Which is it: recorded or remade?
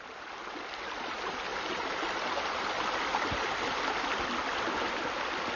recorded